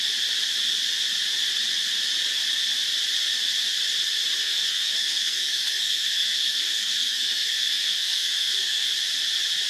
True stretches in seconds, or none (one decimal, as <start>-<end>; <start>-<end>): 0.0-4.4; 8.9-9.7